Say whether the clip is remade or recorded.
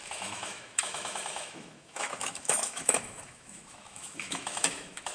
remade